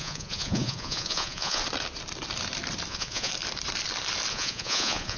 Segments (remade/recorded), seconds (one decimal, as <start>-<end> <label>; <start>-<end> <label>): 0.0-1.6 remade; 1.6-2.9 recorded; 2.9-3.3 remade; 3.3-4.3 recorded; 4.3-5.2 remade